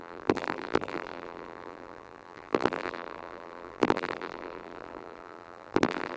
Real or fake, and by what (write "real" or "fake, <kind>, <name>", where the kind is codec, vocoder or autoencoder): fake, vocoder, BigVGAN v2